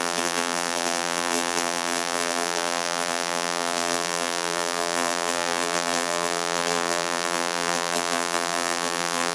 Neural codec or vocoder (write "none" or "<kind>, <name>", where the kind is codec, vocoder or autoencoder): vocoder, BigVGAN v2